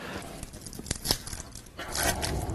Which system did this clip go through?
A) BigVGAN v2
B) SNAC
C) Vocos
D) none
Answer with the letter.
D